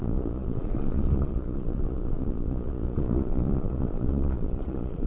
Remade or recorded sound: remade